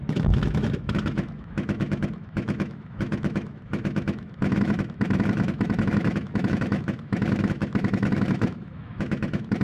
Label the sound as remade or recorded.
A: remade